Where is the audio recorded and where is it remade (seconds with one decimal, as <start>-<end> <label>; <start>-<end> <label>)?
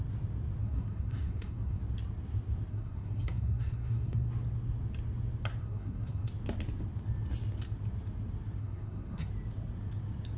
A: 0.0-0.6 recorded; 0.6-1.8 remade; 1.8-2.7 recorded; 2.7-4.3 remade; 4.3-5.6 recorded; 5.6-6.3 remade; 6.3-8.6 recorded; 8.6-9.3 remade; 9.3-10.4 recorded